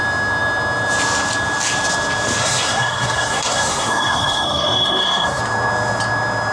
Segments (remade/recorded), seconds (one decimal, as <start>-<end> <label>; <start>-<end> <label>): 0.0-2.4 recorded; 2.4-5.4 remade; 5.4-6.5 recorded